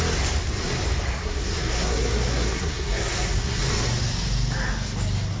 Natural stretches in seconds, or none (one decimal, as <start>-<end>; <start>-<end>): 0.0-1.2; 3.6-5.4